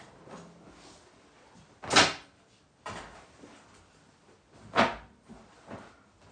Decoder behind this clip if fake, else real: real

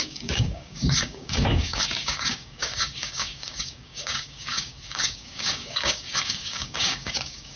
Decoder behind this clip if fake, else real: fake, codec, DAC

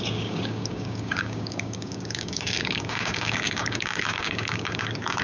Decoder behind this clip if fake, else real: fake, codec, DAC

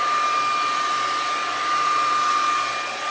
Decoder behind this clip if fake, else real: real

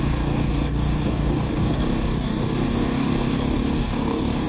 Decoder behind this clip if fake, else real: fake, codec, DAC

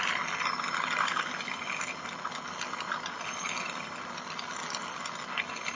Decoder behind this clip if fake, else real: real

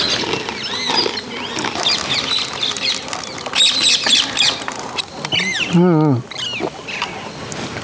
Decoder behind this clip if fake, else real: real